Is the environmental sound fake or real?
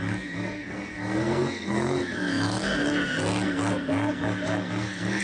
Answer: fake